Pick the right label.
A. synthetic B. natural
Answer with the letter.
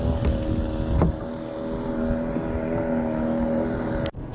B